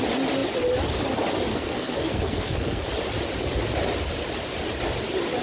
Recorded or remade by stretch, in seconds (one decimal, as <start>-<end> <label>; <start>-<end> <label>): 0.0-1.5 recorded; 1.5-2.8 remade; 2.8-5.4 recorded